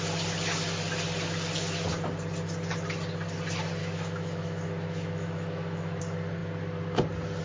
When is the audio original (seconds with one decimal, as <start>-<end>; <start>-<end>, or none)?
0.0-3.8; 6.0-7.4

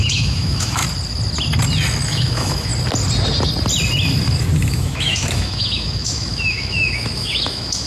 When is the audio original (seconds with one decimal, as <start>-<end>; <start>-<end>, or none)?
0.8-2.1; 2.7-4.7

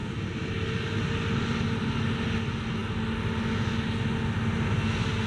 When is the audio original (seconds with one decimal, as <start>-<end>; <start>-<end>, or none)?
0.0-5.3

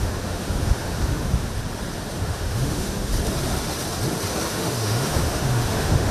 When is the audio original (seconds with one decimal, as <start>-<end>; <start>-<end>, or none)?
1.5-2.2; 3.1-4.5

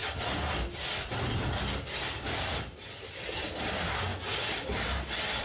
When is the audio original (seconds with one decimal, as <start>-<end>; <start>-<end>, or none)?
0.0-5.4

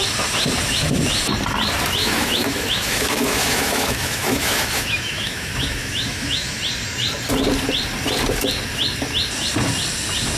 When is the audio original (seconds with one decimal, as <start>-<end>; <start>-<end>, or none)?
0.0-2.0; 6.6-10.4